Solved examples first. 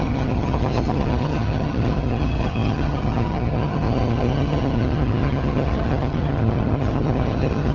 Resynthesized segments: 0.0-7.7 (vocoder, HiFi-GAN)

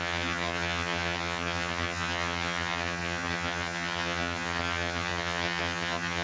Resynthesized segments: 0.0-6.2 (vocoder, HiFi-GAN)

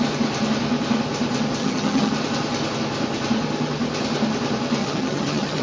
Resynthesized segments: 1.6-2.1 (vocoder, HiFi-GAN); 4.8-5.6